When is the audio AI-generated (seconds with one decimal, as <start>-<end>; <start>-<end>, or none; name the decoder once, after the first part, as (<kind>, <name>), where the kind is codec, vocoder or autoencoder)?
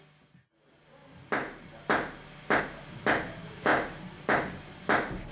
none